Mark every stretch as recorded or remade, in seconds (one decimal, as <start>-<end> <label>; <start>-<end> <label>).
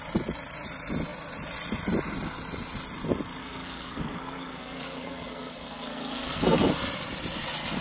0.0-3.4 recorded; 3.4-6.7 remade; 6.7-7.8 recorded